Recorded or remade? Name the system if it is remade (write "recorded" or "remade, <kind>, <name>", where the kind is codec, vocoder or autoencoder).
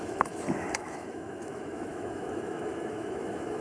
remade, autoencoder, DAC-VAE